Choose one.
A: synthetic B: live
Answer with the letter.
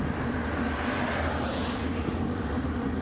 B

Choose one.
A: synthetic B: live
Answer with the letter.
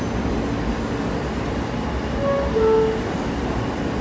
B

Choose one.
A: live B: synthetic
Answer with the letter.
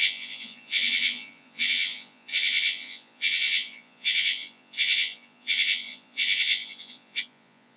B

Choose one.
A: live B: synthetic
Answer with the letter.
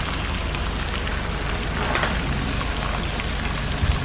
A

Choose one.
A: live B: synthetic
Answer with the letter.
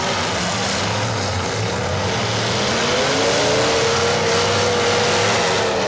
A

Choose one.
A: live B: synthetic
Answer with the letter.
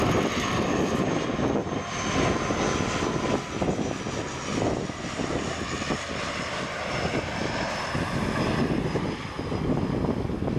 A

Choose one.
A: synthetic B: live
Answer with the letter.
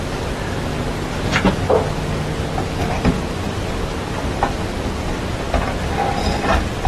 B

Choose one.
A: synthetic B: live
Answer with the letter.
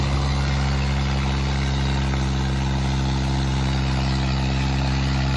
B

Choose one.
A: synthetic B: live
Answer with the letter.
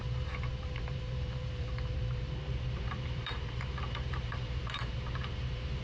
A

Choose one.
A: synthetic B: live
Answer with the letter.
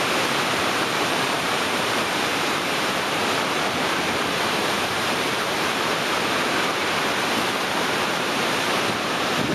A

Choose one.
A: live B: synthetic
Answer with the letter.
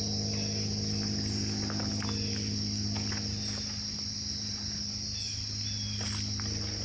A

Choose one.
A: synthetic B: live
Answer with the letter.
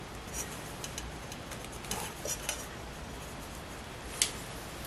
B